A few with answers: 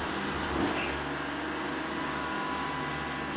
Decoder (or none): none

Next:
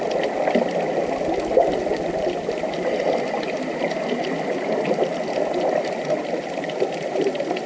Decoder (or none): none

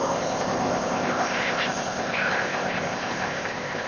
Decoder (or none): codec, ZipCodec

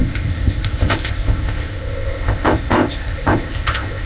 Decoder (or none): codec, ZipCodec